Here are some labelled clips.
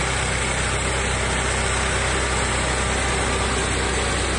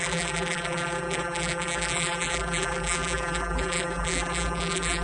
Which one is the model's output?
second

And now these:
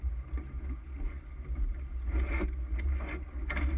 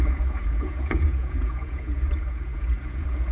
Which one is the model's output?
second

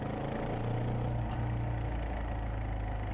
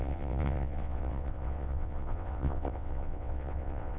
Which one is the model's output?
second